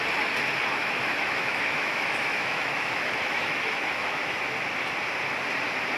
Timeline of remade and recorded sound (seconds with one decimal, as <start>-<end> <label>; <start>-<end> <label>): 0.0-0.8 recorded; 0.8-4.4 remade; 4.4-6.0 recorded